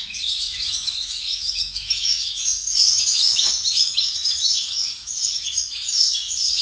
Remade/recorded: remade